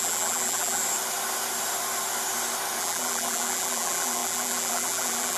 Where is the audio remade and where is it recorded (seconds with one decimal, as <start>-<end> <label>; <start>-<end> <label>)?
0.0-0.8 remade; 0.8-2.8 recorded; 2.8-5.4 remade